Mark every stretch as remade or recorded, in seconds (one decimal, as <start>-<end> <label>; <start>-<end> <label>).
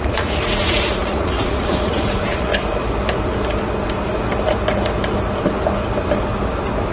0.0-2.5 remade; 2.5-6.9 recorded